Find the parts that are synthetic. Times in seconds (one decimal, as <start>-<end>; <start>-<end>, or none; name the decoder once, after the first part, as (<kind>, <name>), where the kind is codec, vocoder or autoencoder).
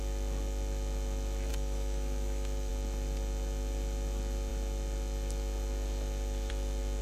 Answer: 1.5-2.7 (autoencoder, DAC-VAE)